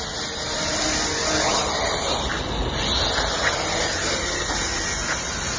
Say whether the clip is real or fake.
real